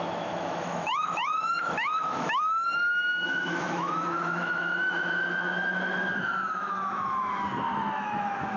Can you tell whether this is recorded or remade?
remade